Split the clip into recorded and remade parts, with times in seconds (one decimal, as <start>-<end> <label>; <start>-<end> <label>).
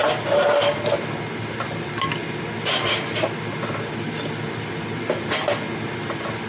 0.0-6.5 recorded